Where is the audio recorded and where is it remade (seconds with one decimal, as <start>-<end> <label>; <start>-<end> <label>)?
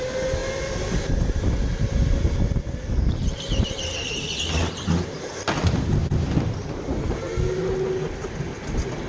0.0-6.0 recorded; 6.0-7.1 remade; 7.1-9.1 recorded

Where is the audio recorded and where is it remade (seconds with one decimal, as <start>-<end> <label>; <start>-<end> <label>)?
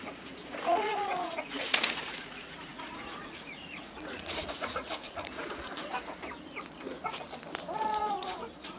0.0-5.9 remade; 5.9-8.1 recorded; 8.1-8.8 remade